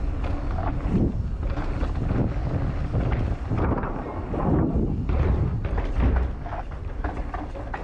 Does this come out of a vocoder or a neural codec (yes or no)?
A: no